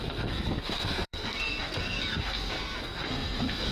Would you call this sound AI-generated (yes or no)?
yes